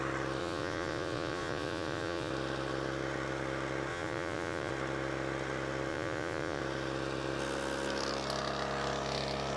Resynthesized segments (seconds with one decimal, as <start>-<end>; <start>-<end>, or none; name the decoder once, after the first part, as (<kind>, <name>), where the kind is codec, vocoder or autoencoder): 0.4-2.3 (vocoder, Vocos); 3.9-4.7; 5.9-6.6